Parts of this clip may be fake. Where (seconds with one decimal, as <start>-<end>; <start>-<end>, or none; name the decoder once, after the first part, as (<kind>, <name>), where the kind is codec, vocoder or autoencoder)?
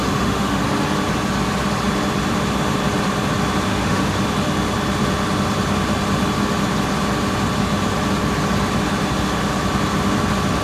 0.0-0.6 (autoencoder, DAC-VAE); 3.7-4.2